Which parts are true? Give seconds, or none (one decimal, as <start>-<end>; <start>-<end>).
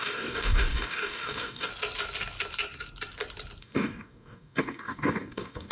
1.7-3.6